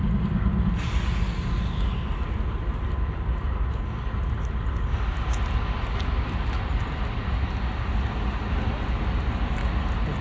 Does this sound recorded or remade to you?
recorded